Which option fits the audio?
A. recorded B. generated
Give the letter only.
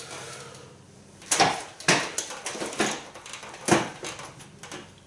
A